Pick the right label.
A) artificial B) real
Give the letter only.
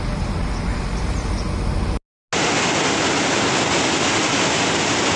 B